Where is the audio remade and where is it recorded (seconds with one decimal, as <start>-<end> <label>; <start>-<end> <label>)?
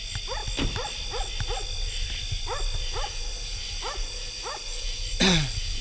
0.0-5.8 recorded